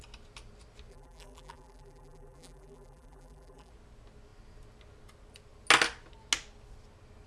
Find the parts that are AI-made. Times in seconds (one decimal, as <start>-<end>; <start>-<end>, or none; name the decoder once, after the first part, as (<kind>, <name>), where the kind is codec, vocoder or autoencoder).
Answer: 0.9-3.7 (vocoder, BigVGAN v2)